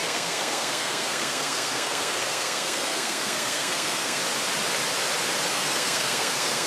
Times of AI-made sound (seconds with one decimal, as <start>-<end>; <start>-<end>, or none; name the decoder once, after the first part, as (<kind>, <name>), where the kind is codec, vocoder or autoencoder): 0.0-4.2 (codec, SNAC); 5.5-6.7